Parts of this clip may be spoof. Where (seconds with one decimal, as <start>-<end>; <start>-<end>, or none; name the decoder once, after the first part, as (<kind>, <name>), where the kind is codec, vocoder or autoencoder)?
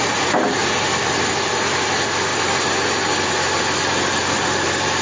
none